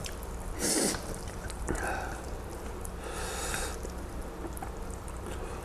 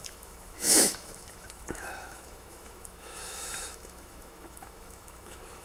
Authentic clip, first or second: first